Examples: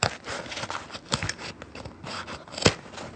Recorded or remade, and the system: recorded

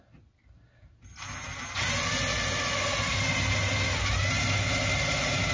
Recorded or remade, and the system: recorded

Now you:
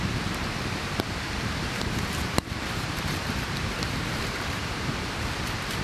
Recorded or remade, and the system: remade, vocoder, BigVGAN v2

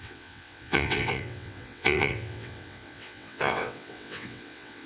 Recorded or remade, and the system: remade, vocoder, WaveNeXt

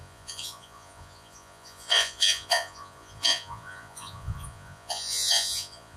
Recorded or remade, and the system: remade, vocoder, Vocos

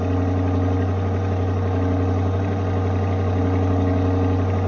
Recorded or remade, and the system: recorded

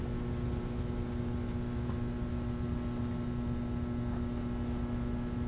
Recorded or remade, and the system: recorded